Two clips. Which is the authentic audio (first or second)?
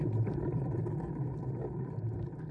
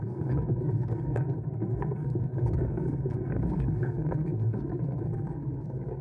first